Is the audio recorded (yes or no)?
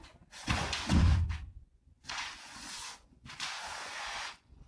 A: no